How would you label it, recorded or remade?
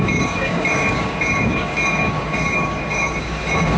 remade